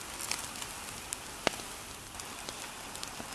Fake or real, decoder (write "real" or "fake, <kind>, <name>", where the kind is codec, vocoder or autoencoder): real